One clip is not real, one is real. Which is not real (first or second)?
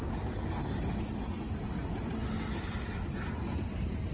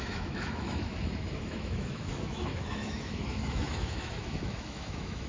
second